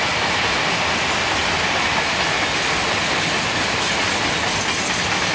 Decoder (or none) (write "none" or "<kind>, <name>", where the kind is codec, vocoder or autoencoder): none